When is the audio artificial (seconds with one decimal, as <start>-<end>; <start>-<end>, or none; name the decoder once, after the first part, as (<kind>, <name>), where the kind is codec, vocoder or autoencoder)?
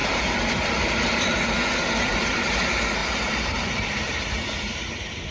2.1-2.6 (vocoder, BigVGAN v2); 3.0-5.3